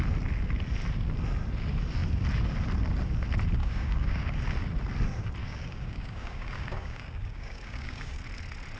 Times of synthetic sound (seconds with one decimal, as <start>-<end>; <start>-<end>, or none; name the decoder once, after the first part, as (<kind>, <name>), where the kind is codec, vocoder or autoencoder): 3.6-4.4 (codec, DAC); 5.4-8.2

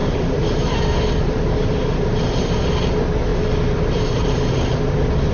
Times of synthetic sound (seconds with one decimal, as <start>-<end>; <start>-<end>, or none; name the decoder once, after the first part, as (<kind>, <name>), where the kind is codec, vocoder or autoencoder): 0.0-2.4 (vocoder, BigVGAN v2); 3.3-5.3

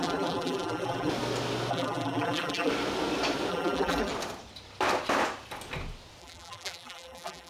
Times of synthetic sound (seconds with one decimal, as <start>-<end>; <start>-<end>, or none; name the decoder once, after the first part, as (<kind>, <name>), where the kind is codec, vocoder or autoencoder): 0.0-1.1 (vocoder, BigVGAN v2); 1.7-2.7; 3.5-4.1; 6.2-7.5

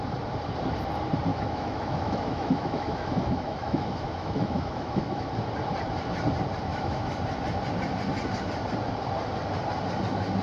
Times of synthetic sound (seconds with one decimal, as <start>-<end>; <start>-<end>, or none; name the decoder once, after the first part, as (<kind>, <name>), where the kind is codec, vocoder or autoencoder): 1.3-5.3 (autoencoder, DAC-VAE); 6.7-7.2

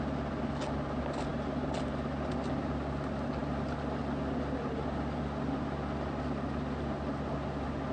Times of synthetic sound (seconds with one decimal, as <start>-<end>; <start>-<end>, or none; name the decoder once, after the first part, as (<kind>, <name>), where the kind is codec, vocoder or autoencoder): none

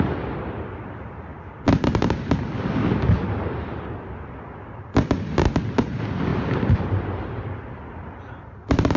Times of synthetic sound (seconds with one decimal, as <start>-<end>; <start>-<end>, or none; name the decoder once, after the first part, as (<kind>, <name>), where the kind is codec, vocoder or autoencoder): none

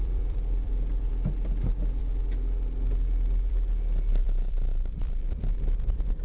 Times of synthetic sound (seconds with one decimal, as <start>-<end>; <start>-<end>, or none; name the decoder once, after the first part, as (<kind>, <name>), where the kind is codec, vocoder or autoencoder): 0.0-1.1 (vocoder, BigVGAN v2); 4.2-5.6